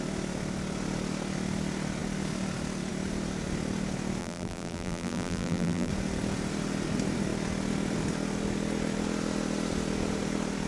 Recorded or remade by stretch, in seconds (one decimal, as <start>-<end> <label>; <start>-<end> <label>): 0.0-4.2 recorded; 4.2-5.9 remade; 5.9-10.7 recorded